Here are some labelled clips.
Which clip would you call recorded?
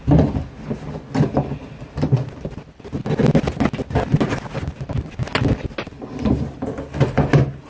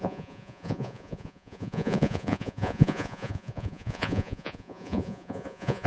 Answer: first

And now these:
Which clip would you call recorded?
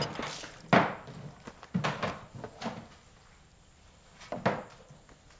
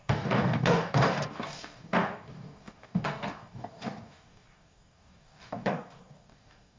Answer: first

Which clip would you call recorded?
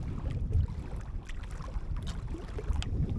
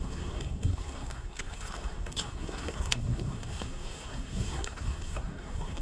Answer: first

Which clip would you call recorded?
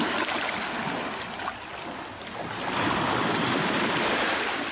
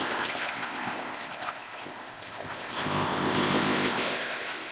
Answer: first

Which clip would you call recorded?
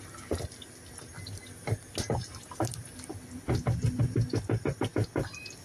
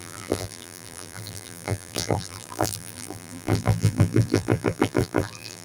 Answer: first